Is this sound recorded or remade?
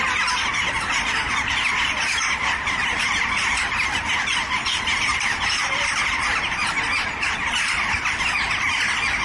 remade